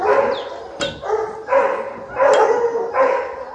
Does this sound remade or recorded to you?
recorded